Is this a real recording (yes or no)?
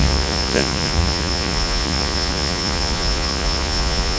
no